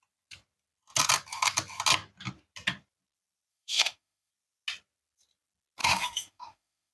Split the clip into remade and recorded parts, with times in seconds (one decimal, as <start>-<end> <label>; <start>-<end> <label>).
0.0-3.5 recorded; 3.5-4.3 remade; 4.3-5.8 recorded; 5.8-6.9 remade